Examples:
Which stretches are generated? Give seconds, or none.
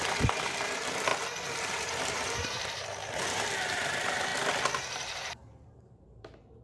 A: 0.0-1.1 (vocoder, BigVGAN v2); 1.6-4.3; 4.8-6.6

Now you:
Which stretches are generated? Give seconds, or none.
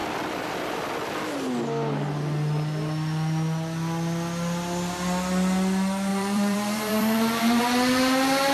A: 0.0-0.6 (vocoder, BigVGAN v2); 6.1-7.6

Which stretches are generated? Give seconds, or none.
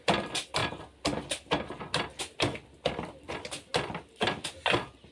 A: none